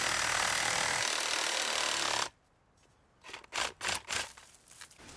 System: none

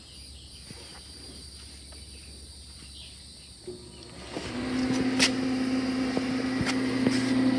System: none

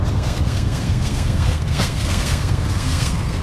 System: codec, SNAC